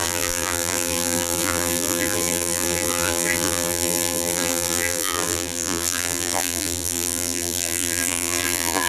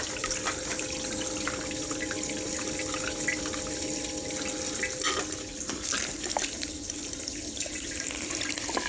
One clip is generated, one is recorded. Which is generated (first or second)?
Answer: first